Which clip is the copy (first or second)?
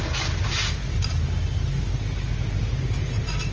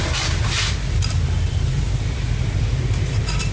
second